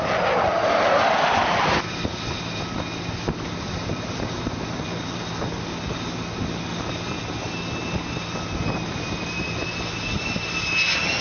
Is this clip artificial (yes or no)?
no